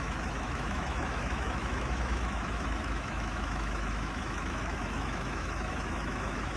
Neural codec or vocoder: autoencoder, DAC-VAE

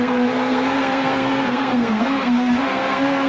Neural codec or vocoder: codec, SNAC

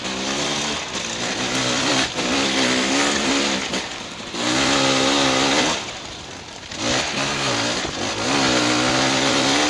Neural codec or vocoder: none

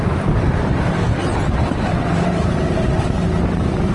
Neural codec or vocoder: vocoder, BigVGAN v2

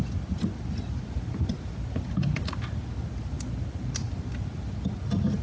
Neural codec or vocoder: none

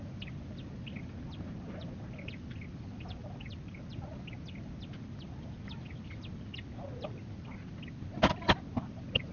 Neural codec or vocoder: none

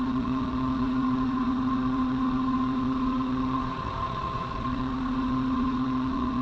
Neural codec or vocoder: vocoder, Vocos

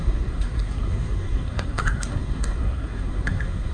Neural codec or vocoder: codec, SNAC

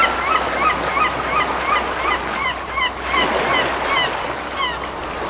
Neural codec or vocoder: none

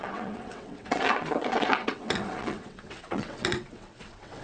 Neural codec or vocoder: vocoder, WaveNeXt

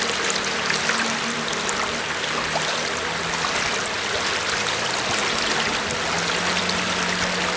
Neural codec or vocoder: none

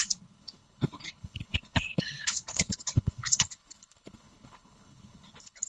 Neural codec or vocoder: codec, HILCodec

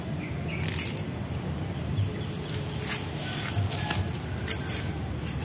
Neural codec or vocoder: none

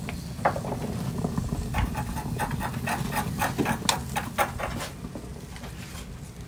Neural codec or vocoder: none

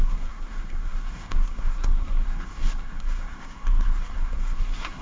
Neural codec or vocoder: codec, SNAC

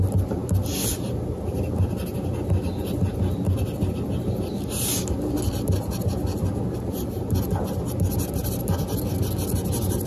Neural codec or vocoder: none